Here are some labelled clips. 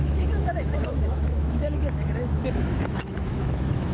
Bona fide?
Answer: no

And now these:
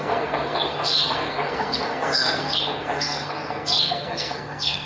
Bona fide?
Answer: no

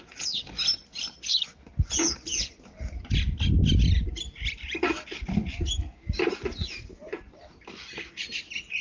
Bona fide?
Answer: yes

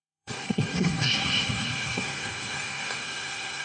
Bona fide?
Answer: no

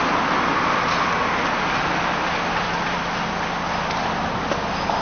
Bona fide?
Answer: yes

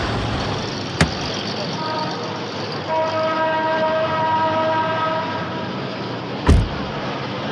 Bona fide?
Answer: yes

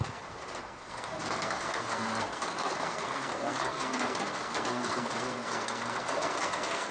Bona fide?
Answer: no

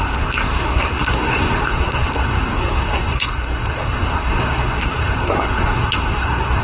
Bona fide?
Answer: no